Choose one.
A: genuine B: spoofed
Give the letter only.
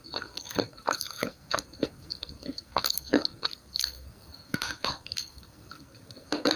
B